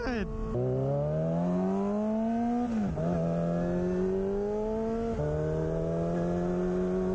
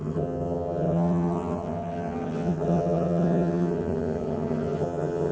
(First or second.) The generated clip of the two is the second